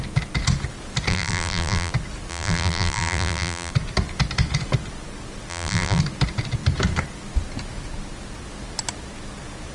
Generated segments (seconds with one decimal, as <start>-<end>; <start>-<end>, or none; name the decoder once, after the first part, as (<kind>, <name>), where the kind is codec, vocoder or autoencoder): 1.1-1.9 (vocoder, BigVGAN v2); 2.3-3.7; 5.5-6.0

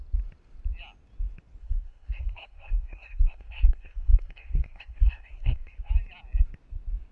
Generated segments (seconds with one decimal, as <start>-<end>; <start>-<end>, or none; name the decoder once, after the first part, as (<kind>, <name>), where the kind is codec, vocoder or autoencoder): 1.6-5.9 (codec, SNAC)